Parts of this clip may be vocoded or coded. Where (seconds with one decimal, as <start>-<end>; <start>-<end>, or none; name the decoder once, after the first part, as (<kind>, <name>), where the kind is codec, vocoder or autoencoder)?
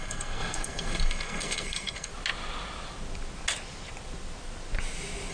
0.0-2.1 (codec, SNAC)